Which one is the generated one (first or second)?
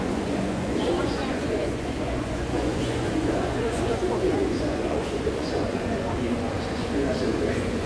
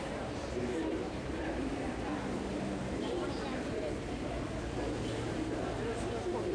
first